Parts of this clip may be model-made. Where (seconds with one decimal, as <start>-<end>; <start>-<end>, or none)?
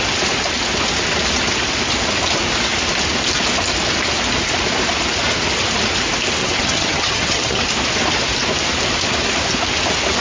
6.4-7.6